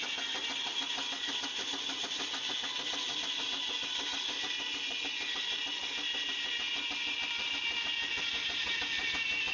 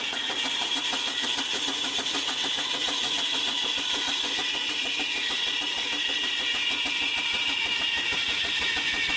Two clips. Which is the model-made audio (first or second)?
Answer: second